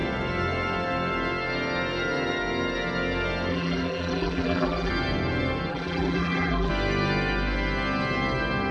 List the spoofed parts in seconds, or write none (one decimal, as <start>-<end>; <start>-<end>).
3.5-4.9; 5.7-6.7